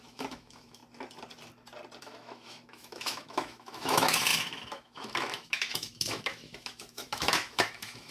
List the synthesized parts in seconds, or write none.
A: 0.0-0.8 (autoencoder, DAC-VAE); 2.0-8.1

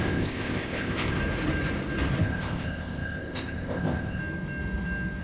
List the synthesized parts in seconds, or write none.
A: 0.0-1.2 (codec, ZipCodec); 2.2-4.2

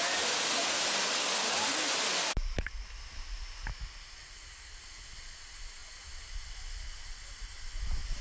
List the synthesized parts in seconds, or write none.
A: none

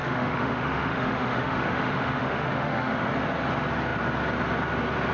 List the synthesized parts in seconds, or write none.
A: 0.0-3.1 (autoencoder, DAC-VAE)